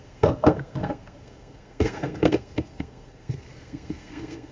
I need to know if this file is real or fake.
fake